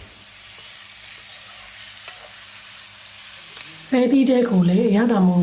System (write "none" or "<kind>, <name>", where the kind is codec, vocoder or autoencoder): none